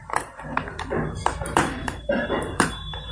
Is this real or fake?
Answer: fake